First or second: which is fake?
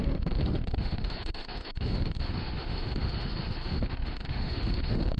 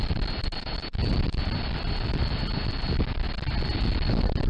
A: first